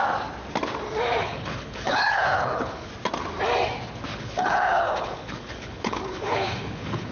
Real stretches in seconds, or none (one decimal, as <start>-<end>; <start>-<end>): 0.0-1.2; 2.9-4.1